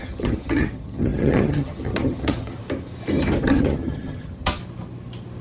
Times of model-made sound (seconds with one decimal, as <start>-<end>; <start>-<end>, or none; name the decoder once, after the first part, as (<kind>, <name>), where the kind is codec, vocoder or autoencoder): 0.0-2.6 (vocoder, HiFi-GAN); 3.4-4.6

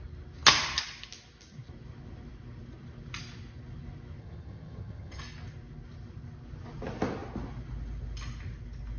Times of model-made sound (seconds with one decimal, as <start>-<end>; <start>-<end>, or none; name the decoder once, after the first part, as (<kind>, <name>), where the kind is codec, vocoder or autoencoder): 4.2-5.2 (vocoder, HiFi-GAN)